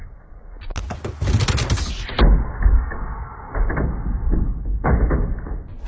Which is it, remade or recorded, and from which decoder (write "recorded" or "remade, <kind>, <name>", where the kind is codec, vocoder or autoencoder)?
recorded